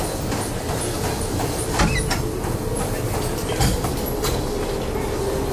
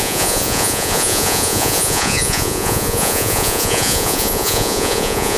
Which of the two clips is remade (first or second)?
second